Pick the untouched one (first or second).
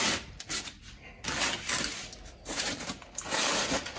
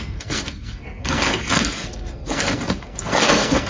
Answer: first